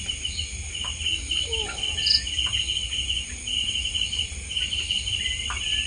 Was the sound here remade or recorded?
recorded